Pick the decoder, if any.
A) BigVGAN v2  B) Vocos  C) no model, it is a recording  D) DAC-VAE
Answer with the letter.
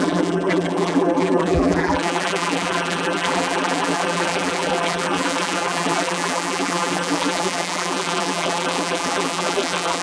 A